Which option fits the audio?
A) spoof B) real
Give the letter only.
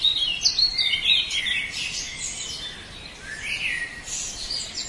B